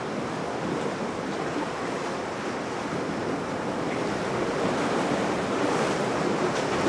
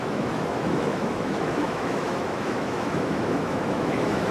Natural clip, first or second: first